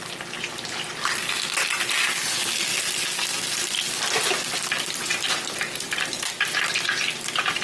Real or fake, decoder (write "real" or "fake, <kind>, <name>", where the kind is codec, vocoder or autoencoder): real